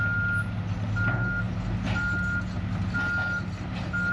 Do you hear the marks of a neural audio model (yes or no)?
no